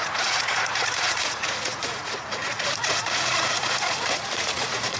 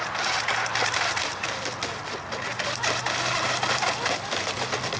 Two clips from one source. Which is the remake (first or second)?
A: first